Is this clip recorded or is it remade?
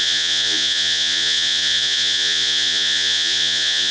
remade